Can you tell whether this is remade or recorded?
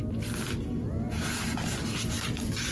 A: recorded